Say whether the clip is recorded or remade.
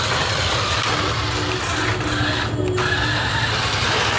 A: recorded